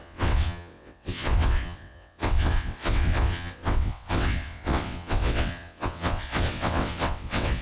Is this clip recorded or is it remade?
remade